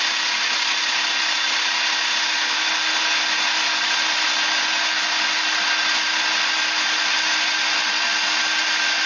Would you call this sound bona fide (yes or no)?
yes